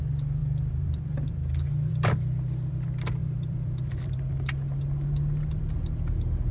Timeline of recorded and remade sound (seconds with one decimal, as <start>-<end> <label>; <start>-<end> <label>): 0.0-0.4 recorded; 0.4-1.5 remade; 1.5-3.2 recorded; 3.2-4.3 remade; 4.3-6.5 recorded